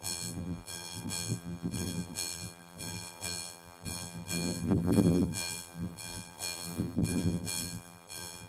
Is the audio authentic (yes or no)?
no